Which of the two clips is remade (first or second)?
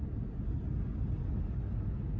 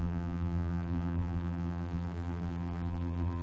second